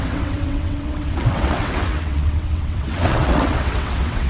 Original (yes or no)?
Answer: no